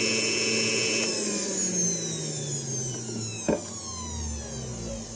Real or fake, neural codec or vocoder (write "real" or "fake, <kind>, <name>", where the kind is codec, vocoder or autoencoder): real